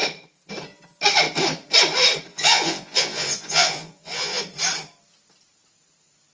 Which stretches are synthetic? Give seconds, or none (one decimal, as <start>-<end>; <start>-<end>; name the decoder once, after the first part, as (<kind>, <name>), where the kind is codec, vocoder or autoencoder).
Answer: 2.3-4.4 (vocoder, Vocos)